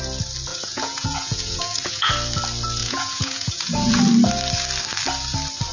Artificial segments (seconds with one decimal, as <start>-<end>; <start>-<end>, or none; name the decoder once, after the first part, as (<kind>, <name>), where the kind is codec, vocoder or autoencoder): 0.5-2.1 (vocoder, Vocos); 2.8-3.9